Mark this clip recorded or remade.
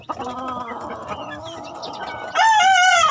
recorded